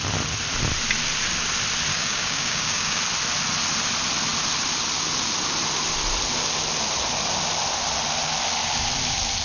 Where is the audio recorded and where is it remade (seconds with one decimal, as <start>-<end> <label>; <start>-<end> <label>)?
0.0-1.9 recorded; 1.9-3.0 remade; 3.0-9.4 recorded